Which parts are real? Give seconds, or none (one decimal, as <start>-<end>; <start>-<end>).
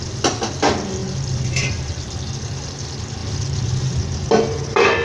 0.0-5.0